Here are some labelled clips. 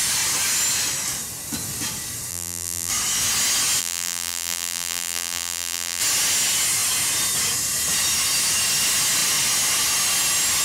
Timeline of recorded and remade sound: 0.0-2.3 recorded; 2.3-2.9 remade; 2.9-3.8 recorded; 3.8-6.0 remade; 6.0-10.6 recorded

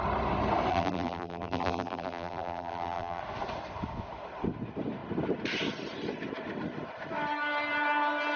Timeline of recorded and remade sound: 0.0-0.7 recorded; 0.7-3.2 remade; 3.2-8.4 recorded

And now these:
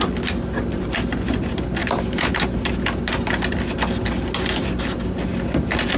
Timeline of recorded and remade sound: 0.0-1.8 recorded; 1.8-2.7 remade; 2.7-6.0 recorded

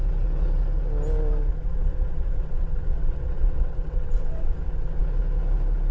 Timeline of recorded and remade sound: 0.0-1.5 recorded; 1.5-5.0 remade; 5.0-5.9 recorded

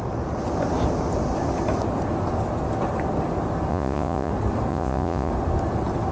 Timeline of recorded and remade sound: 0.0-3.7 recorded; 3.7-4.3 remade; 4.3-4.7 recorded; 4.7-5.3 remade; 5.3-6.1 recorded

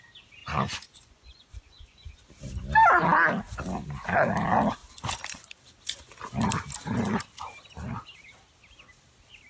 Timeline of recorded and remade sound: 0.0-0.4 recorded; 0.4-2.2 remade; 2.2-9.5 recorded

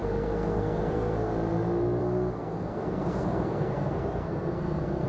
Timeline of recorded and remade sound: 0.0-1.3 remade; 1.3-2.0 recorded; 2.0-5.1 remade